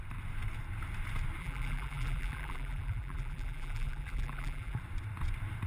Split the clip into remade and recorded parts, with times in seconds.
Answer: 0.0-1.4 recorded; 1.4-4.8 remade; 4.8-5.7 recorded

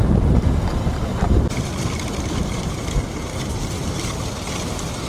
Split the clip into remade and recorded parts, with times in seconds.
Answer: 0.0-1.1 recorded; 1.1-4.2 remade; 4.2-5.1 recorded

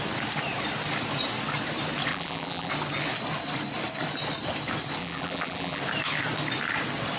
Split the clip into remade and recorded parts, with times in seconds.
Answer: 0.0-2.1 recorded; 2.1-2.7 remade; 2.7-5.0 recorded; 5.0-5.8 remade; 5.8-7.2 recorded